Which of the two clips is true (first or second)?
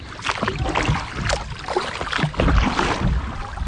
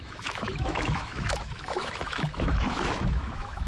first